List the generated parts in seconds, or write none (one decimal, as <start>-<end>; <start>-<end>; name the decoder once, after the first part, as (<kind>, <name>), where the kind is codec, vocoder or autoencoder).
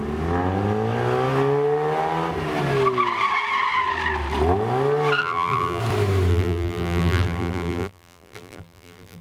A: 5.2-5.8 (vocoder, BigVGAN v2); 6.3-9.2